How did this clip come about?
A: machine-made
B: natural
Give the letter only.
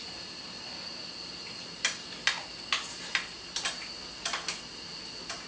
B